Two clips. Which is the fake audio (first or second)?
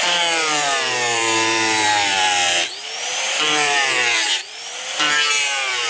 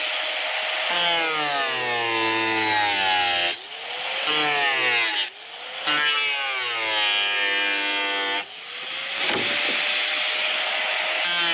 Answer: first